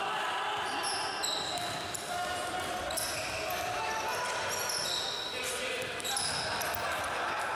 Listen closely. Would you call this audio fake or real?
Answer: real